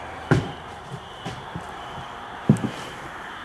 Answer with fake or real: fake